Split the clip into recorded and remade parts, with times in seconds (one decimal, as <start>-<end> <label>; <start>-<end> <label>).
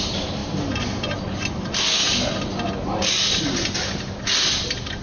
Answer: 0.0-5.0 recorded